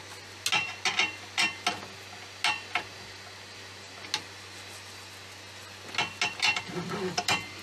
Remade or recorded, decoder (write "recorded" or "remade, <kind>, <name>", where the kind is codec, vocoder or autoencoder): recorded